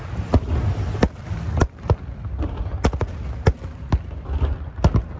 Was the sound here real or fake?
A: real